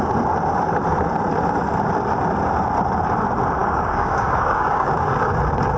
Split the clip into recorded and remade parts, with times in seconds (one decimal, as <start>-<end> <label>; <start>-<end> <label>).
0.0-3.6 recorded; 3.6-5.1 remade; 5.1-5.8 recorded